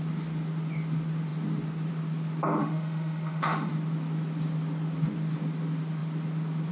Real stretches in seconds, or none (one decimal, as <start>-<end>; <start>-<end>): 0.0-2.6; 3.7-6.7